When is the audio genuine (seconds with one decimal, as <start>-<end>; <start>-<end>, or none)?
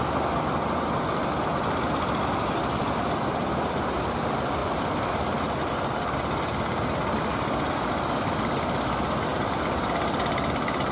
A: 0.0-1.5; 4.0-4.6; 7.9-9.3